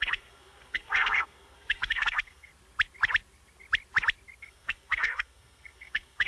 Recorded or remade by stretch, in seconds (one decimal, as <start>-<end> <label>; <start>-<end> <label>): 0.0-2.5 remade; 2.5-4.4 recorded; 4.4-6.3 remade